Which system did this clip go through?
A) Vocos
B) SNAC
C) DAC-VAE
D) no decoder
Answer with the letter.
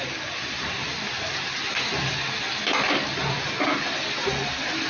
D